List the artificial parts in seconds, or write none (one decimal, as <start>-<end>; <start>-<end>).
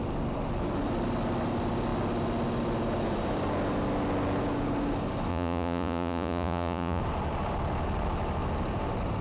5.3-7.0